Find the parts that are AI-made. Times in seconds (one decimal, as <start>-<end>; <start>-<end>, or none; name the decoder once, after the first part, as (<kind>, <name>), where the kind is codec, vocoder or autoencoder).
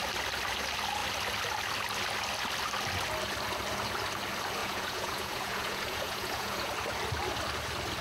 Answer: 4.6-6.7 (vocoder, Vocos)